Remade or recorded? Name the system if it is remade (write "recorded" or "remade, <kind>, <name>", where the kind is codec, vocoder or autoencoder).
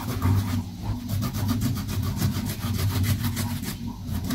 recorded